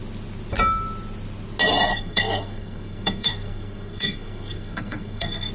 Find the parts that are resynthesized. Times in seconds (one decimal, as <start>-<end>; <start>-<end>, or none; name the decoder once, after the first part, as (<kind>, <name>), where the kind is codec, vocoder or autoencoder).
1.9-5.5 (codec, SNAC)